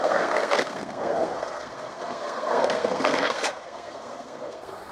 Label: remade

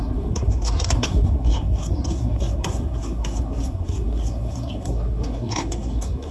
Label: remade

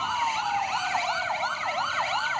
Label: recorded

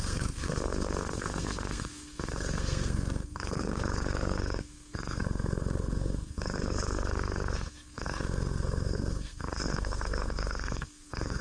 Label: remade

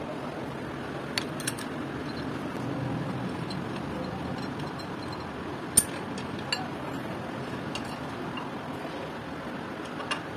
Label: recorded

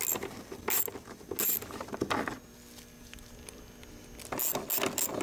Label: recorded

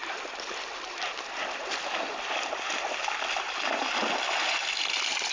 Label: recorded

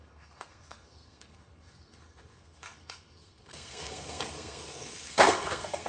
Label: remade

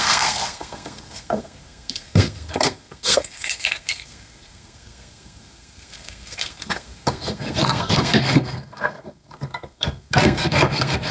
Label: remade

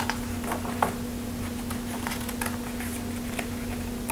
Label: recorded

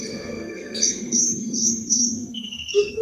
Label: remade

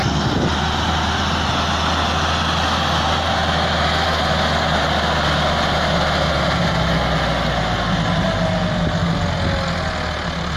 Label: recorded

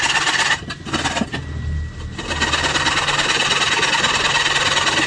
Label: recorded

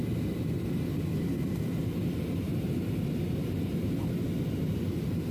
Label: recorded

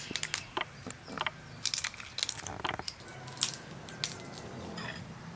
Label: recorded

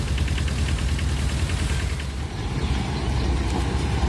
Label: recorded